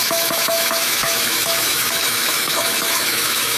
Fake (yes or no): yes